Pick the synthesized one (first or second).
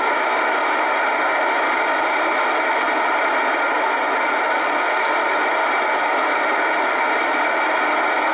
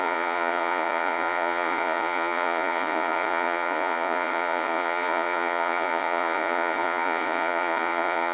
second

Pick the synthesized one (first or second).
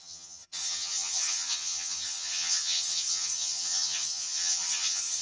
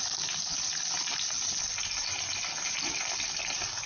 first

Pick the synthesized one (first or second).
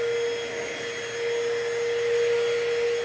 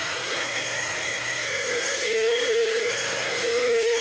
second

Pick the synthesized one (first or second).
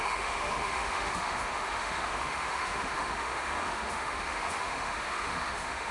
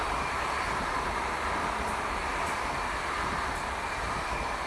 first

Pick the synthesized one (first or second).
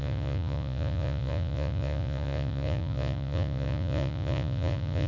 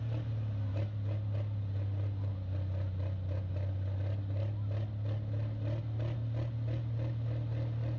first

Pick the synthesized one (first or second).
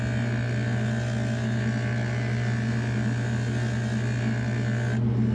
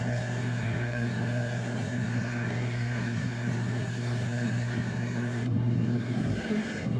second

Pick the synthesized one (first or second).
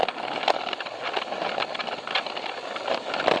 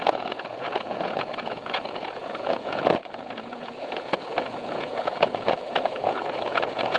second